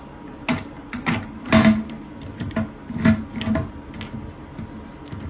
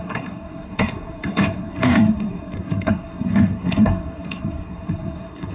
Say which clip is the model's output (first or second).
second